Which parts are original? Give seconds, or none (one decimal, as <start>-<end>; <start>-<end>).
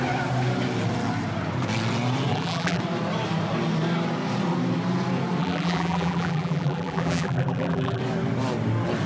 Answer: 0.0-2.3; 2.8-5.4; 8.0-9.1